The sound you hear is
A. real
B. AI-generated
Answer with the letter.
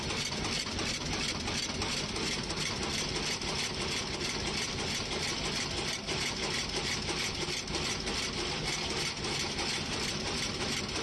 A